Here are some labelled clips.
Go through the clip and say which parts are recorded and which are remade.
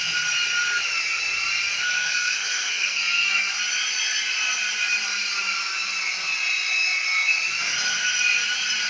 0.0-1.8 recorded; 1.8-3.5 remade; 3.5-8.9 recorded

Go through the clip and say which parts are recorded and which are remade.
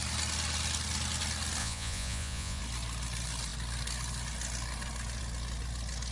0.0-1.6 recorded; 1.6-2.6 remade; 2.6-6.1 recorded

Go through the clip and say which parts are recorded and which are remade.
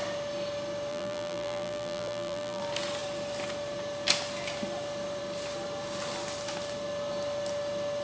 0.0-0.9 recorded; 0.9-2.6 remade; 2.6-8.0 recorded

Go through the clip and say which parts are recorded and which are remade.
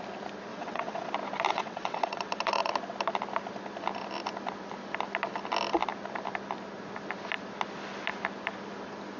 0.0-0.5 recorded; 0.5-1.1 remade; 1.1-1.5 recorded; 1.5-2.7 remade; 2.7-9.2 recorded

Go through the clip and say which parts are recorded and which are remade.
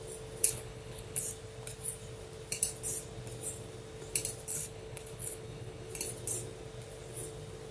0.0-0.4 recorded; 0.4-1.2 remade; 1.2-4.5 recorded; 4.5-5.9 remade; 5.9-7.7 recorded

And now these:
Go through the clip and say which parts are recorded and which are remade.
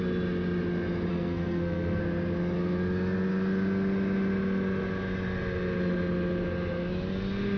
0.0-1.1 recorded; 1.1-2.0 remade; 2.0-7.6 recorded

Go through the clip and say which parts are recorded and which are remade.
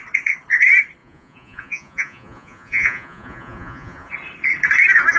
0.0-1.0 recorded; 1.0-4.1 remade; 4.1-5.2 recorded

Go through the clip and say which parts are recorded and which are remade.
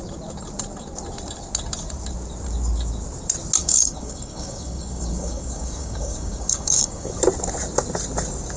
0.0-3.6 recorded; 3.6-7.2 remade; 7.2-8.6 recorded